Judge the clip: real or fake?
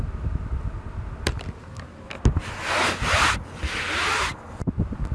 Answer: real